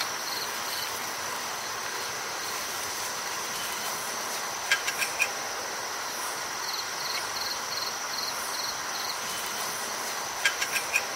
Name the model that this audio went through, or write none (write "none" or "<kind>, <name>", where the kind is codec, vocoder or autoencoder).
none